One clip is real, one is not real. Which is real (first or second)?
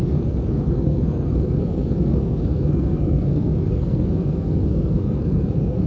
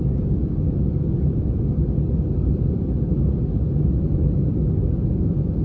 second